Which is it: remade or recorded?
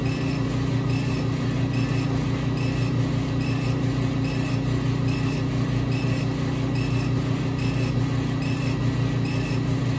recorded